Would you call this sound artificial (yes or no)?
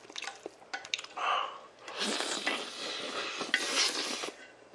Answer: no